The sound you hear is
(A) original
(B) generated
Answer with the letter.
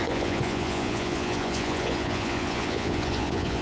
B